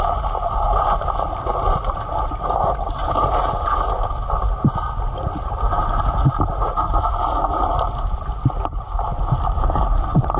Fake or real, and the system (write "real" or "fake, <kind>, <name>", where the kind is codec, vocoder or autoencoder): real